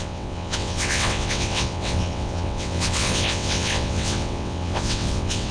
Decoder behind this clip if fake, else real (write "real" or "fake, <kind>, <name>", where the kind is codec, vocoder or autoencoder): fake, vocoder, WaveNeXt